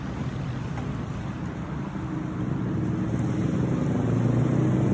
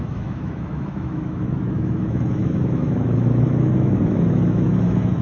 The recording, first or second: first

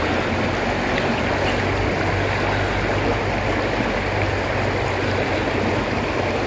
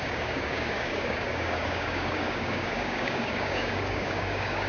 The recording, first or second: first